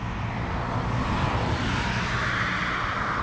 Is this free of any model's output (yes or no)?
yes